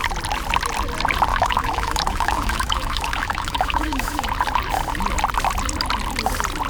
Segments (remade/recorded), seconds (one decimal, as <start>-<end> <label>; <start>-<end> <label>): 0.0-1.3 recorded; 1.3-4.2 remade; 4.2-6.7 recorded